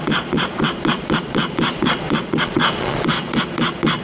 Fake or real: fake